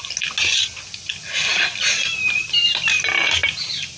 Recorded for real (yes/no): yes